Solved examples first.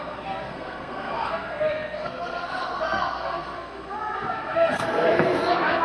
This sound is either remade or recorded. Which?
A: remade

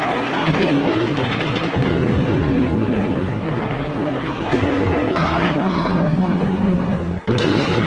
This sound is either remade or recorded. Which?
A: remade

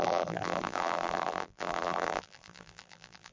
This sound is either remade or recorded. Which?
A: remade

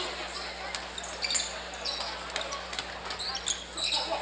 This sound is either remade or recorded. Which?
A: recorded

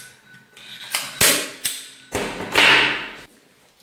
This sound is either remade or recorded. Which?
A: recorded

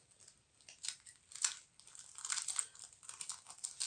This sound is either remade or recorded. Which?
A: recorded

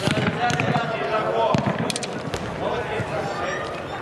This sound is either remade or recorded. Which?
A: recorded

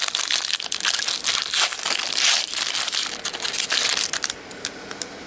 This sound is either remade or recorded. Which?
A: recorded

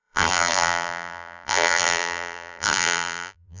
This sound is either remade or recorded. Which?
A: remade